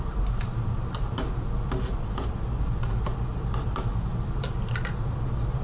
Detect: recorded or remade recorded